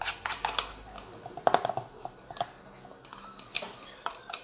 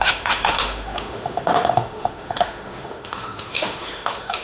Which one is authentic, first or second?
first